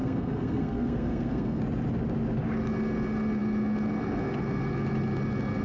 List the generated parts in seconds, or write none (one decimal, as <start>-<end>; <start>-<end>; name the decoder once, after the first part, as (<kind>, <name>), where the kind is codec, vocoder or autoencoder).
0.0-1.6 (codec, SNAC)